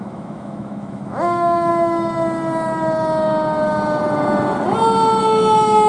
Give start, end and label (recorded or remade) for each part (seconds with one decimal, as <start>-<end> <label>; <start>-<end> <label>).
0.0-1.7 remade; 1.7-5.2 recorded; 5.2-5.9 remade

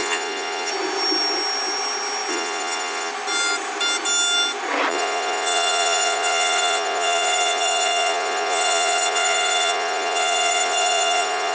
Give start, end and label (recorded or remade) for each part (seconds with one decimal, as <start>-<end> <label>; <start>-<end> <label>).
0.0-0.7 remade; 0.7-2.3 recorded; 2.3-3.1 remade; 3.1-4.9 recorded; 4.9-11.5 remade

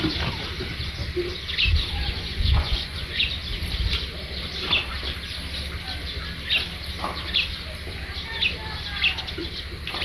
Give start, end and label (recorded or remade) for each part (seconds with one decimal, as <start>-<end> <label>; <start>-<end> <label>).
0.0-2.0 recorded; 2.0-3.3 remade; 3.3-10.0 recorded